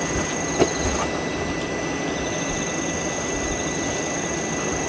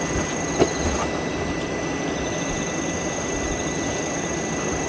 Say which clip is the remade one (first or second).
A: second